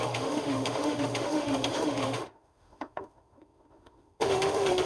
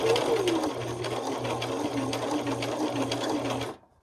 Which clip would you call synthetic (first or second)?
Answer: first